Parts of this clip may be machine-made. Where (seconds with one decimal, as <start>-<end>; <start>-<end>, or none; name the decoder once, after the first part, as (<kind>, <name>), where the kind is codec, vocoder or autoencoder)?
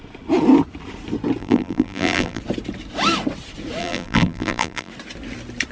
1.4-2.4 (vocoder, BigVGAN v2); 3.8-4.9